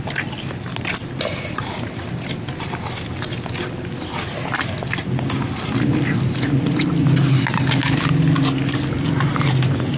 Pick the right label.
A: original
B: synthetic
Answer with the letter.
A